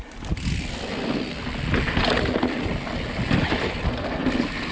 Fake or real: real